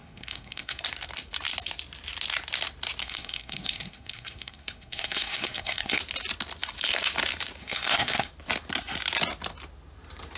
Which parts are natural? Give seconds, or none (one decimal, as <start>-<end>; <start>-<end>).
0.8-3.0; 6.0-7.6; 8.3-10.4